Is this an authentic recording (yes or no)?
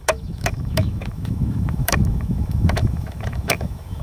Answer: no